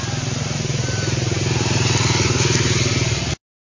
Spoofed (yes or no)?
no